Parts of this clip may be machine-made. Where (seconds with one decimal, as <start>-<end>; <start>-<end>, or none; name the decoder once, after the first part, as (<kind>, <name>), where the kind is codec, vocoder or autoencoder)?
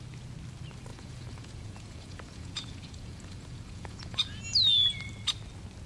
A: 0.9-4.4 (vocoder, Vocos)